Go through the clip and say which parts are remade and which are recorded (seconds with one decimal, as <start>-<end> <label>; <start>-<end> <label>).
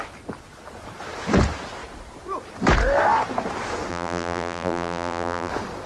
0.0-3.9 recorded; 3.9-5.5 remade; 5.5-5.9 recorded